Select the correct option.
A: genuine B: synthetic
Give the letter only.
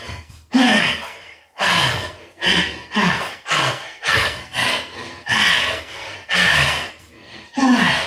B